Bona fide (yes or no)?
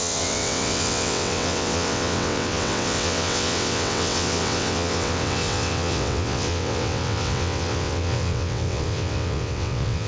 no